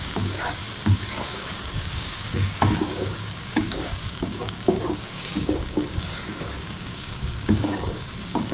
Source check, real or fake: fake